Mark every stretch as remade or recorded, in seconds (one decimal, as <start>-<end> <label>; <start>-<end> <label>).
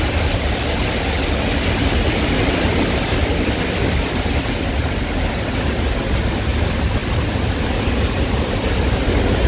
0.0-9.5 recorded